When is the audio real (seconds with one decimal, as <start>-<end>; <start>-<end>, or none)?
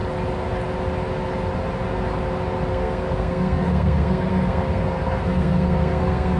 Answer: 0.0-2.7